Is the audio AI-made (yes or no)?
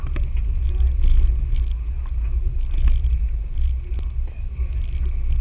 no